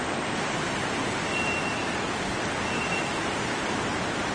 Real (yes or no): yes